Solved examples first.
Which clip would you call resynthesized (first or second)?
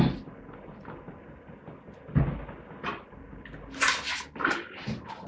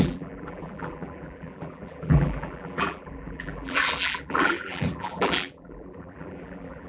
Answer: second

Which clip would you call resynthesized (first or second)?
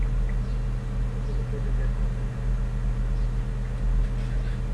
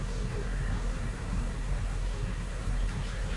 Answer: second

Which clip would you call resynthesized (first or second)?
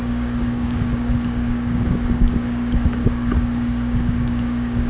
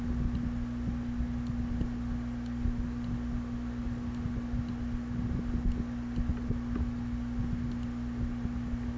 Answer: first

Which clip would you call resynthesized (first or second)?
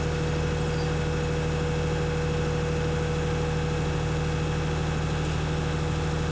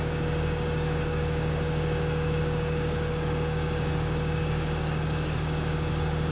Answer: second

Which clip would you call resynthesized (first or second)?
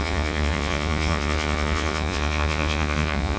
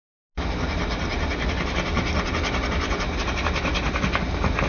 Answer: first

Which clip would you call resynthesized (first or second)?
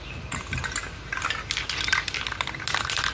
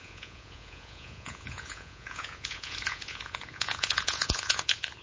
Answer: second